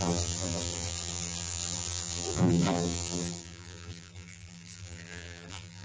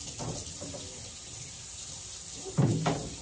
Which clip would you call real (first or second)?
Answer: second